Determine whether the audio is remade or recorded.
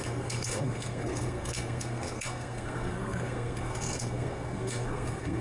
remade